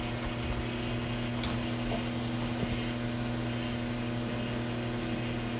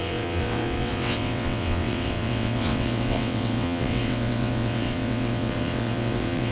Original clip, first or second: first